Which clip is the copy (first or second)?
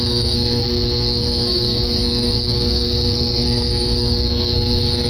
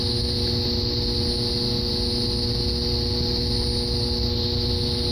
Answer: first